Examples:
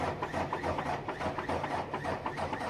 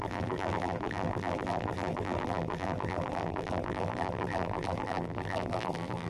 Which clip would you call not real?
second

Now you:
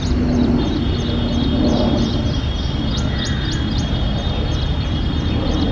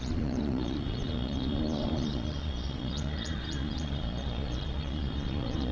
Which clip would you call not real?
second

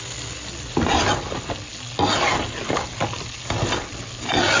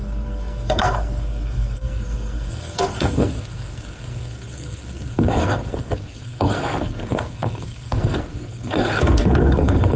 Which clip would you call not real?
second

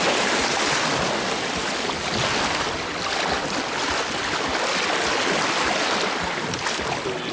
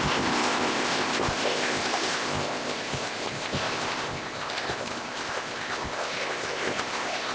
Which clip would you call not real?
second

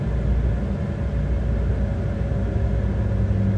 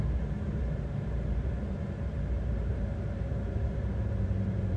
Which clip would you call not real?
second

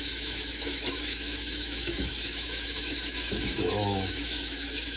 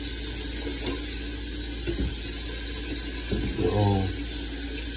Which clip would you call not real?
first